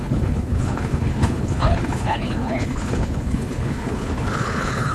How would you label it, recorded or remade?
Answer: remade